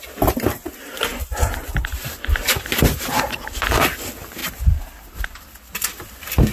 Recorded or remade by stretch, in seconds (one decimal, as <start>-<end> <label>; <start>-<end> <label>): 0.0-4.4 recorded; 4.4-5.2 remade; 5.2-6.5 recorded